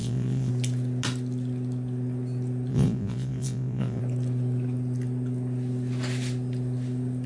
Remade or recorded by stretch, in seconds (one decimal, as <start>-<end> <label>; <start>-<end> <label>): 0.0-0.5 remade; 0.5-2.7 recorded; 2.7-4.0 remade; 4.0-7.3 recorded